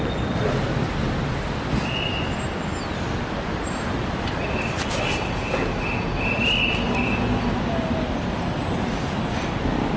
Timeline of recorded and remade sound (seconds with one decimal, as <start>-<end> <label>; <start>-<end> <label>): 0.0-10.0 recorded